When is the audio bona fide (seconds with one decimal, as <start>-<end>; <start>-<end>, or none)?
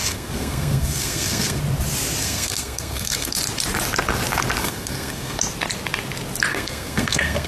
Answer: 1.6-2.2; 3.4-4.6; 5.4-6.5